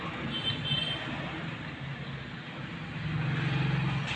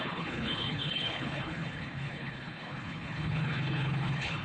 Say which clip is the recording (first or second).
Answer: first